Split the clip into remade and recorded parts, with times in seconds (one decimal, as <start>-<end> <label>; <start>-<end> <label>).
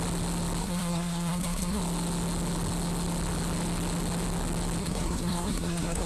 0.0-0.6 recorded; 0.6-1.8 remade; 1.8-4.8 recorded; 4.8-6.1 remade